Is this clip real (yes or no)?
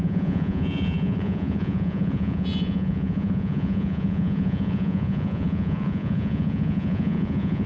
no